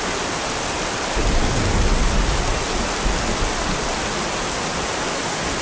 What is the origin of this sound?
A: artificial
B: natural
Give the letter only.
B